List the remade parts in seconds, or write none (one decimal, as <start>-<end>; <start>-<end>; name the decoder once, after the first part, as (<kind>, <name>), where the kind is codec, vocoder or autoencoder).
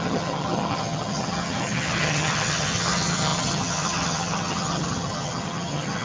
0.0-6.0 (vocoder, HiFi-GAN)